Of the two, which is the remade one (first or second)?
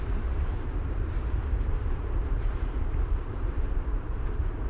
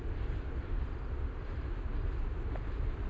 first